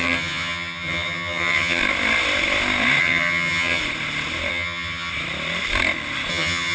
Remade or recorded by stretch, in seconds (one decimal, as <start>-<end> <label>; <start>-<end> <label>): 0.0-1.8 remade; 1.8-3.0 recorded; 3.0-3.8 remade; 3.8-4.5 recorded; 4.5-5.1 remade; 5.1-6.3 recorded; 6.3-6.7 remade